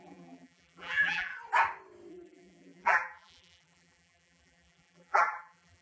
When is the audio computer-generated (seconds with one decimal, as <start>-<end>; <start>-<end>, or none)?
0.0-1.3; 2.1-5.8